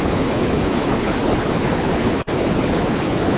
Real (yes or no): no